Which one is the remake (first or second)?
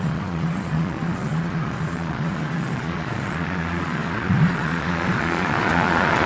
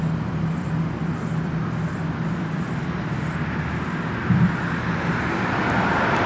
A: first